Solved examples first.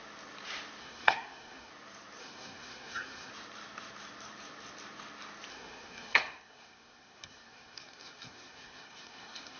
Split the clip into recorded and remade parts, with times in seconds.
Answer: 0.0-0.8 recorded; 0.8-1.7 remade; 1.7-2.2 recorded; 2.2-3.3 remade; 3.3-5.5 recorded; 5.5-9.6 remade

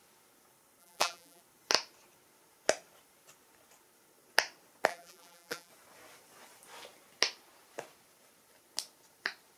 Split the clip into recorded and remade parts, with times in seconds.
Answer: 0.0-0.8 recorded; 0.8-1.4 remade; 1.4-4.9 recorded; 4.9-5.7 remade; 5.7-9.6 recorded